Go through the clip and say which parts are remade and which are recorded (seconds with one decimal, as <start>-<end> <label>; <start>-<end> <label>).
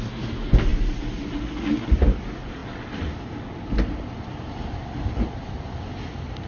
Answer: 0.0-6.5 recorded